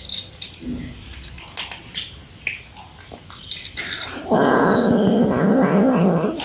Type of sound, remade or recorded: recorded